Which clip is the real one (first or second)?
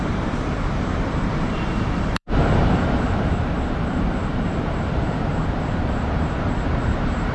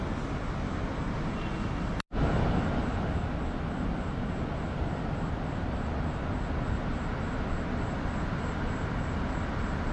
second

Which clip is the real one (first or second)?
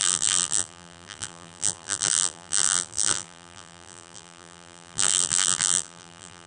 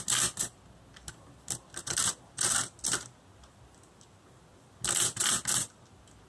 second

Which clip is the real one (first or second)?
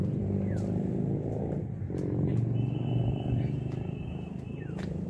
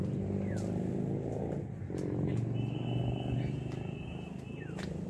second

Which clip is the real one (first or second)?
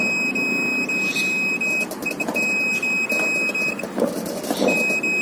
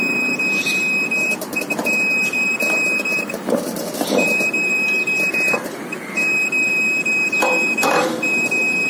first